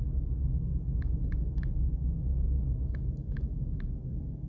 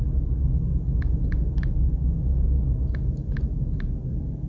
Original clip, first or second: second